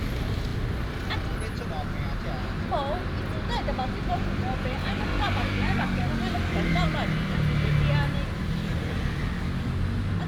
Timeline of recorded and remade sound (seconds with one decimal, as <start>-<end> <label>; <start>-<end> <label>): 0.0-4.8 recorded; 4.8-6.1 remade; 6.1-9.2 recorded; 9.2-9.8 remade; 9.8-10.3 recorded